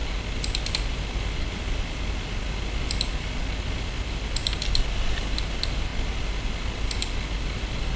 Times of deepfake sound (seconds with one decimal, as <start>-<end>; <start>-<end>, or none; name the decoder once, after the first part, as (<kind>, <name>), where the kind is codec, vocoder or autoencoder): none